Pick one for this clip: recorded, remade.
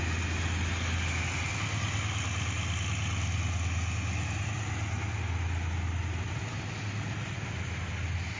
recorded